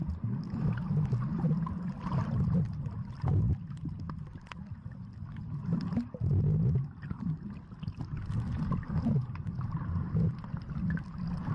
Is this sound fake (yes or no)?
no